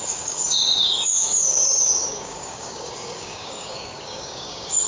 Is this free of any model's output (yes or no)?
no